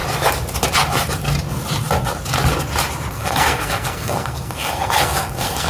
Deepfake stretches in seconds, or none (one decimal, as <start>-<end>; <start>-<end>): 3.1-5.7